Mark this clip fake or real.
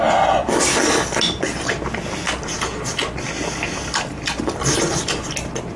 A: real